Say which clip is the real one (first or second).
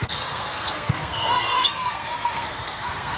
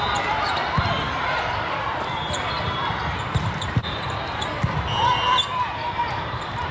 second